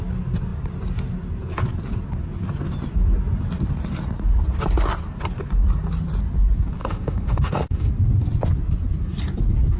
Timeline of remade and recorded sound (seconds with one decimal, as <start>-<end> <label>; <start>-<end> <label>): 0.0-6.8 recorded; 6.8-7.9 remade; 7.9-9.8 recorded